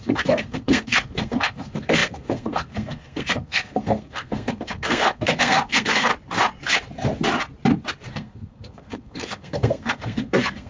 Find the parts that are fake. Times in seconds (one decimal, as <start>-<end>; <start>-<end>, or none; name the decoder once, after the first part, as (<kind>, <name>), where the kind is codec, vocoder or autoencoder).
0.0-6.1 (codec, SNAC); 8.1-10.7